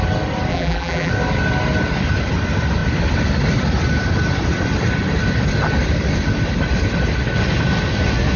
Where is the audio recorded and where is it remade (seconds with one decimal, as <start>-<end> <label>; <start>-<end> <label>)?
0.0-0.5 recorded; 0.5-1.1 remade; 1.1-8.4 recorded